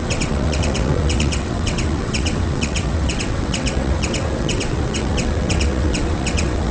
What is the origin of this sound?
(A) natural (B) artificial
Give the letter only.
B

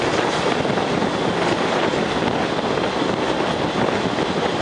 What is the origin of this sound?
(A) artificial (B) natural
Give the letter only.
B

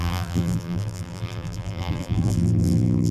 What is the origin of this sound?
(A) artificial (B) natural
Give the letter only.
A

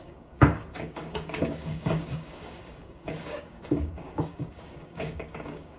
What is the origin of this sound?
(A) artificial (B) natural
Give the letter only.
A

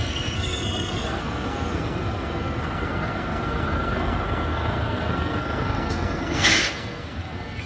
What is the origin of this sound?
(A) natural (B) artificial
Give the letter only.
B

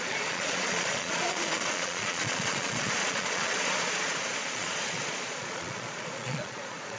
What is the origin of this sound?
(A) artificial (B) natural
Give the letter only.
A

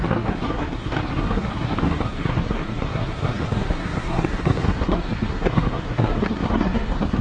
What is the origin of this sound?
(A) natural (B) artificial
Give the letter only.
B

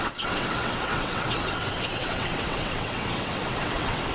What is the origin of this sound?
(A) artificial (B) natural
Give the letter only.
A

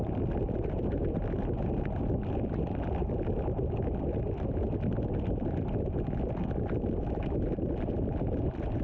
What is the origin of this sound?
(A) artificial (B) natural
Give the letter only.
B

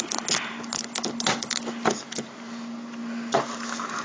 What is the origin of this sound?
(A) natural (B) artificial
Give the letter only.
A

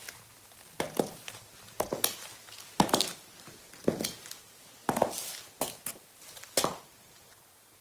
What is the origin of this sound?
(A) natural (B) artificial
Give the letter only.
A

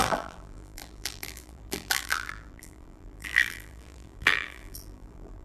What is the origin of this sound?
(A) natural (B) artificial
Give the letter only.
B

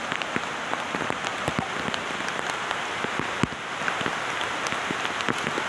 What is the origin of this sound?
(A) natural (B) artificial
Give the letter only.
A